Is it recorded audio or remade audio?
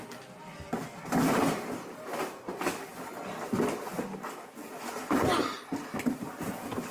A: recorded